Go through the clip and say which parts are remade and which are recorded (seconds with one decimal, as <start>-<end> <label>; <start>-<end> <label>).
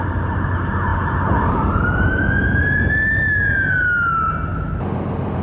0.0-5.4 recorded